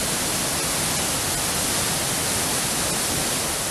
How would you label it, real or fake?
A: real